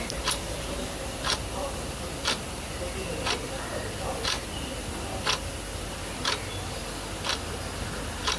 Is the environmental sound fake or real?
fake